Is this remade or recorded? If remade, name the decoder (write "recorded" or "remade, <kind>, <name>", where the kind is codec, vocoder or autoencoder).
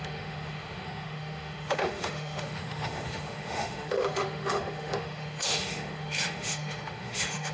remade, autoencoder, DAC-VAE